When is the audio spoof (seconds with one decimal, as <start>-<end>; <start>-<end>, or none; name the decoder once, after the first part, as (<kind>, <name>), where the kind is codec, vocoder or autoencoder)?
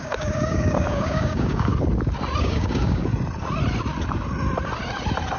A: 0.0-1.7 (codec, DAC); 2.4-3.1